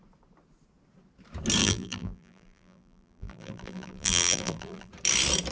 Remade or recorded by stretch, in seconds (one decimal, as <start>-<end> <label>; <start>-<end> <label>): 0.0-1.6 recorded; 1.6-4.9 remade; 4.9-5.5 recorded